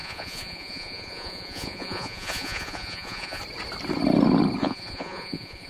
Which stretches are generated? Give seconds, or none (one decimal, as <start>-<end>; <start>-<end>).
0.0-3.4; 4.6-5.7